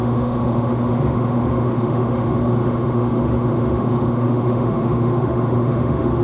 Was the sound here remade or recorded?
remade